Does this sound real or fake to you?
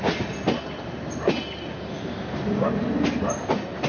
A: real